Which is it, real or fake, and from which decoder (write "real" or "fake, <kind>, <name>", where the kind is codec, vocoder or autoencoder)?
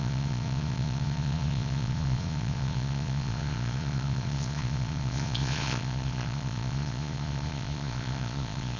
fake, vocoder, Vocos